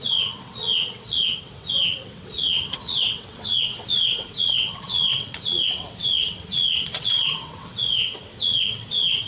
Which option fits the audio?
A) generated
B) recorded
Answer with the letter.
A